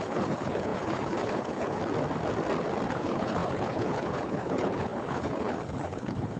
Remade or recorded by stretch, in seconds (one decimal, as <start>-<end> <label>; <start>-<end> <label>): 0.0-1.8 remade; 1.8-2.9 recorded; 2.9-6.4 remade